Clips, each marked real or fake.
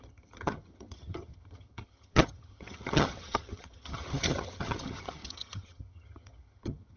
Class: fake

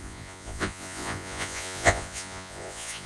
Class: fake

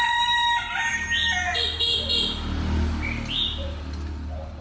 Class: real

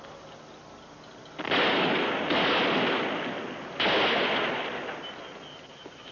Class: real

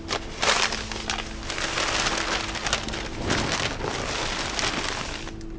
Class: real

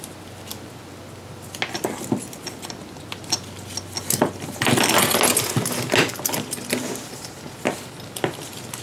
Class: real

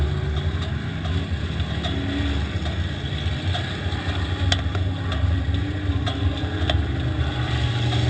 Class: real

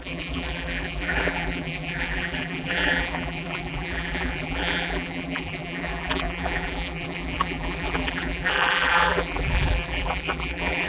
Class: fake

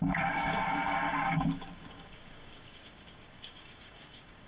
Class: fake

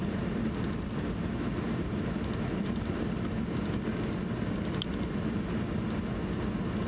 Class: real